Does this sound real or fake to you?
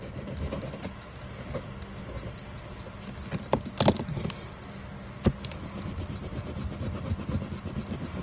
real